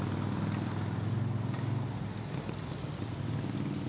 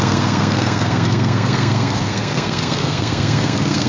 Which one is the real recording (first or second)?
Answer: first